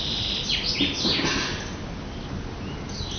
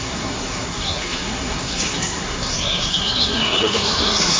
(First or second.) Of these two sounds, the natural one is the first